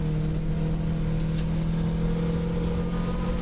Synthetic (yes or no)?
no